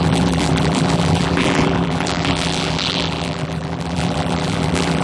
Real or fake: fake